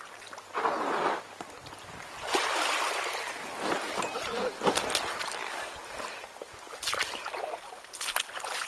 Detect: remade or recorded recorded